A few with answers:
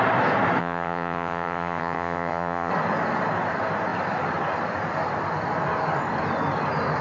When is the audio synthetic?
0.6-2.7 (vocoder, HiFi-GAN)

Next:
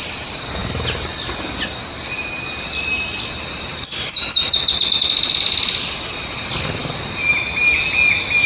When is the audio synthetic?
none

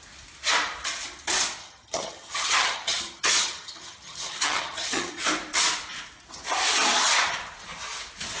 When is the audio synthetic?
1.6-5.2 (vocoder, HiFi-GAN)

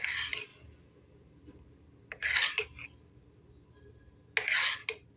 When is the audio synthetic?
none

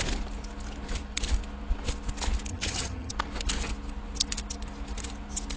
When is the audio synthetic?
2.5-3.1 (vocoder, HiFi-GAN)

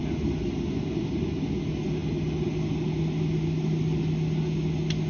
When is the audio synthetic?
none

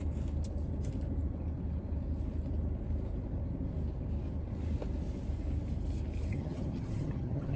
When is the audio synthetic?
6.3-7.6 (vocoder, HiFi-GAN)

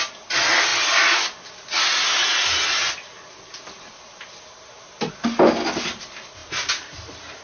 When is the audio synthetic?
none